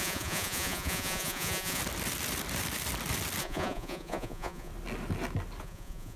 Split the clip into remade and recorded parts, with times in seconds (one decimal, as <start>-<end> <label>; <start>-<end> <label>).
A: 0.0-1.8 remade; 1.8-3.4 recorded; 3.4-4.7 remade; 4.7-5.6 recorded; 5.6-6.2 remade